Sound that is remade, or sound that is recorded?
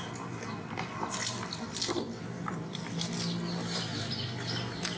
recorded